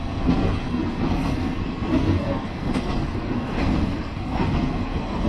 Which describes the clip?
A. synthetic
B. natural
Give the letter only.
A